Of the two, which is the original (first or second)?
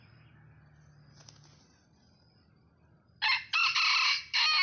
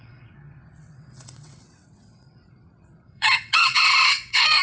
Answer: first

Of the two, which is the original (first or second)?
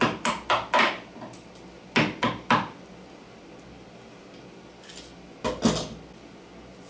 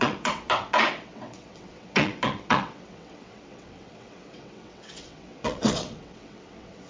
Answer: first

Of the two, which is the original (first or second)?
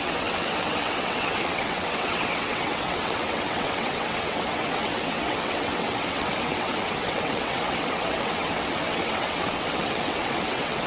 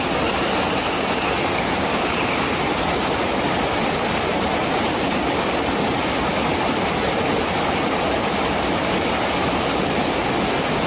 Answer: second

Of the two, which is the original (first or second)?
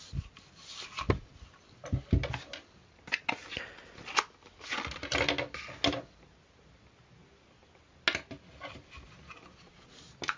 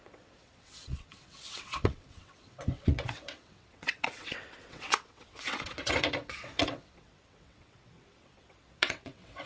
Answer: first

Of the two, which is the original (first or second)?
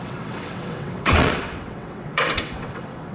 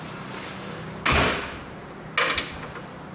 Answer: second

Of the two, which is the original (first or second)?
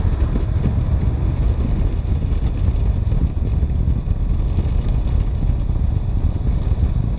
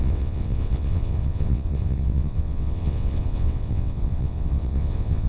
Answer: first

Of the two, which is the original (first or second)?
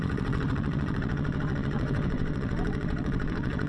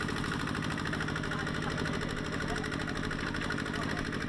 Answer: second